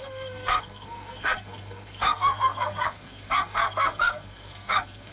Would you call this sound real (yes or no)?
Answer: no